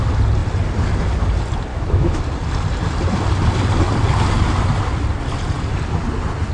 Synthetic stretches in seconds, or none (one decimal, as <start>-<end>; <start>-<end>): 1.7-2.2